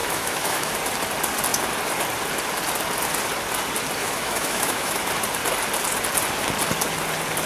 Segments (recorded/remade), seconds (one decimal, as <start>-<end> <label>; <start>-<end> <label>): 0.0-0.7 remade; 0.7-4.0 recorded; 4.0-5.0 remade; 5.0-7.5 recorded